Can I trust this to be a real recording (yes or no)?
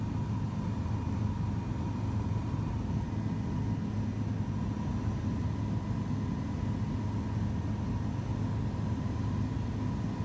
yes